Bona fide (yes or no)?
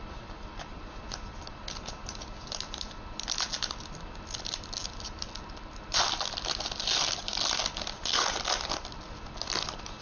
yes